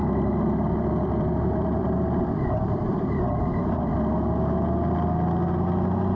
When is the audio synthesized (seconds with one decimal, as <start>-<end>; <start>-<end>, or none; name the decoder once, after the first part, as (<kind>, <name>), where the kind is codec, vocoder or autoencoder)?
0.0-3.7 (vocoder, BigVGAN v2)